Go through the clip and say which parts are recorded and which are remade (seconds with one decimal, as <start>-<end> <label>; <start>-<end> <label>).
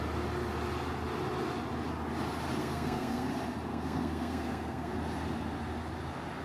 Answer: 0.0-2.6 recorded; 2.6-3.3 remade; 3.3-3.7 recorded; 3.7-4.9 remade; 4.9-6.4 recorded